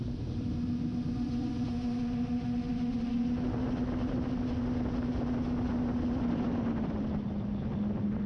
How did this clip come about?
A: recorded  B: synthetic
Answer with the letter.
A